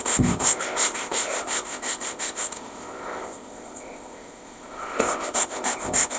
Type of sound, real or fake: fake